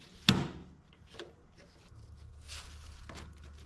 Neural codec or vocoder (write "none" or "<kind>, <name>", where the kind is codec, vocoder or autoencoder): none